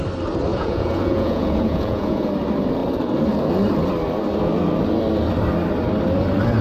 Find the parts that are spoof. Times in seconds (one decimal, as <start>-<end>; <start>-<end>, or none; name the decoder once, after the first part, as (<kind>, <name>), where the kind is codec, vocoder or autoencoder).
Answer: 0.5-2.3 (vocoder, Vocos)